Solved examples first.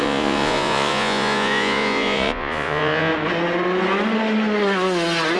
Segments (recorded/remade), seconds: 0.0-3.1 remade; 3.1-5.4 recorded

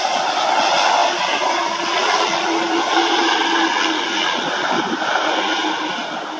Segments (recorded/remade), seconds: 0.0-6.4 recorded

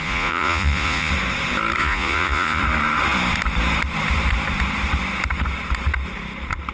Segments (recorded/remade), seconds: 0.0-1.1 remade; 1.1-1.8 recorded; 1.8-2.6 remade; 2.6-6.7 recorded

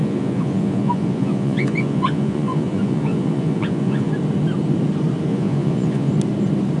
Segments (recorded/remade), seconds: 0.0-4.1 remade; 4.1-5.3 recorded; 5.3-6.1 remade; 6.1-6.8 recorded

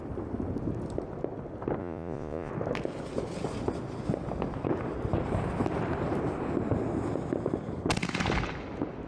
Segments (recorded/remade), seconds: 0.0-1.8 recorded; 1.8-2.5 remade; 2.5-9.1 recorded

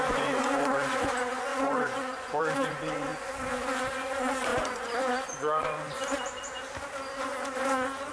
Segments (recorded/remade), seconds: 0.0-3.1 remade; 3.1-3.9 recorded; 3.9-6.0 remade; 6.0-8.1 recorded